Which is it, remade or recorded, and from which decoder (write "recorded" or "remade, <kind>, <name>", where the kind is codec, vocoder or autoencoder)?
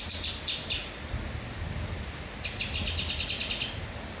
recorded